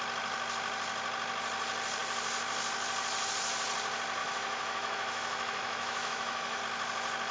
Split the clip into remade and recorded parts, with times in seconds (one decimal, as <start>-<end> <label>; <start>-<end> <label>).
0.0-4.2 recorded; 4.2-6.6 remade; 6.6-7.3 recorded